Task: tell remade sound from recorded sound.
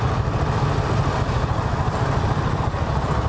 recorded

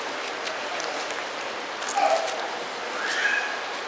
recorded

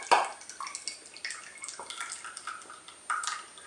recorded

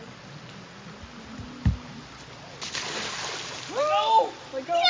recorded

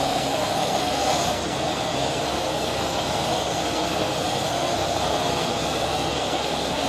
remade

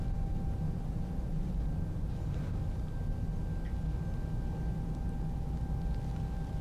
recorded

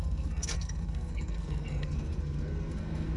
remade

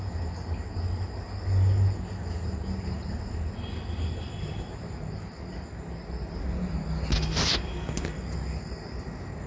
recorded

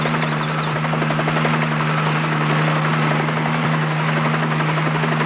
recorded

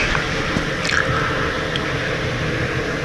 recorded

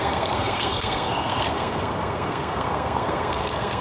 remade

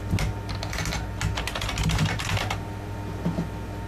recorded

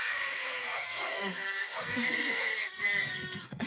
remade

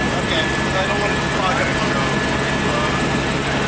recorded